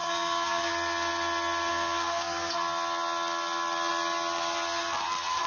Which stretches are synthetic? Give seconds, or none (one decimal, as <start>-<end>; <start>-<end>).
0.0-0.7; 1.7-2.5